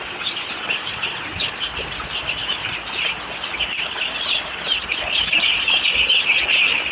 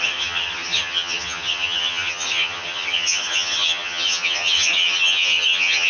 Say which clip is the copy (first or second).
second